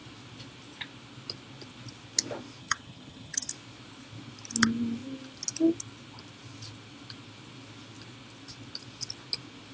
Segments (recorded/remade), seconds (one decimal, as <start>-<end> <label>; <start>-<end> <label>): 0.0-2.6 recorded; 2.6-3.5 remade; 3.5-9.7 recorded